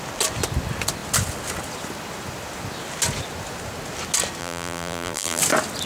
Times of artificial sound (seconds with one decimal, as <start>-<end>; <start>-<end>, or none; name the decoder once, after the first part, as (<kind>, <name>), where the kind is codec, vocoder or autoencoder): 4.4-5.4 (vocoder, BigVGAN v2)